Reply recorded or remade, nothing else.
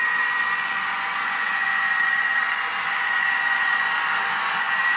remade